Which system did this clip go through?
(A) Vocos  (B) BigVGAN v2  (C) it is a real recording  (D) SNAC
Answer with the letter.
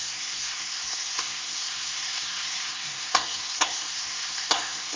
D